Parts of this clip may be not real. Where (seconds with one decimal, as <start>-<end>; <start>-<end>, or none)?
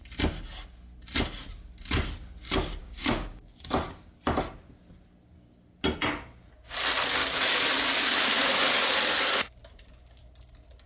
2.8-3.5